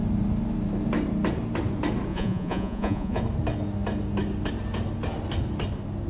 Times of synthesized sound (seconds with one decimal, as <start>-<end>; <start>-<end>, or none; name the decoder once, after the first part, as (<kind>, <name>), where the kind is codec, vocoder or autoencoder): 2.1-3.2 (vocoder, Vocos)